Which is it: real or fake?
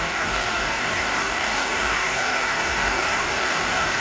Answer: fake